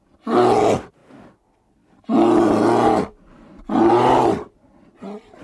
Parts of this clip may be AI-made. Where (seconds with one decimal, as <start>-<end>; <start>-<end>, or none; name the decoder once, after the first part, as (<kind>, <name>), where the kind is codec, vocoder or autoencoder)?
none